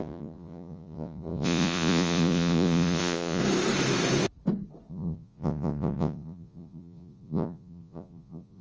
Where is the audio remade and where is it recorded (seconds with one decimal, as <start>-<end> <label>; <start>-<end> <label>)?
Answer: 0.0-3.4 remade; 3.4-4.9 recorded; 4.9-8.6 remade